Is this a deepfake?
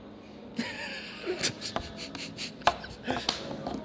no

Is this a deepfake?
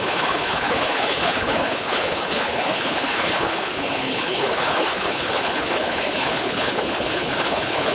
yes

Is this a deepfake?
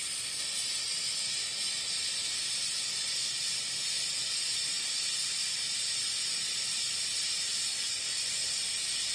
no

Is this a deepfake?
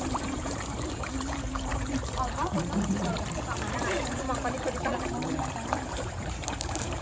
yes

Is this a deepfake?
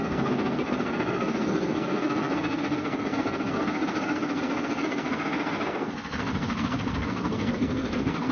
yes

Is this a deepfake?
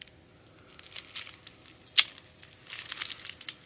no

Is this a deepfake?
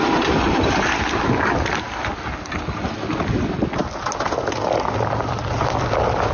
no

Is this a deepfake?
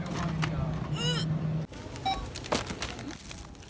no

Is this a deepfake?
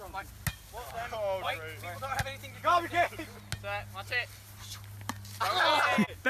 no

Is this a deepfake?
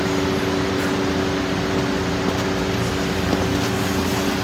no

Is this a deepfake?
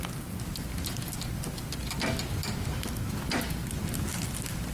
no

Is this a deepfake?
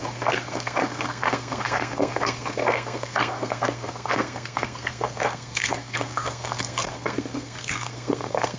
yes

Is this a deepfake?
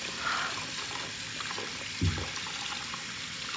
no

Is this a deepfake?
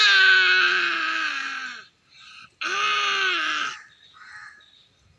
no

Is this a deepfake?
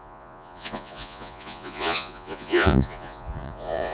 yes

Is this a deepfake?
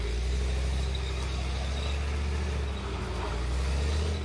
no